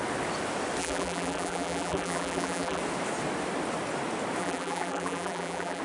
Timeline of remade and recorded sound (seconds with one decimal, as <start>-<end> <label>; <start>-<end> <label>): 0.0-0.8 recorded; 0.8-2.8 remade; 2.8-4.4 recorded; 4.4-5.8 remade